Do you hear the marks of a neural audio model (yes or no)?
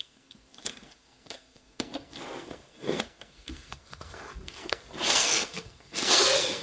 yes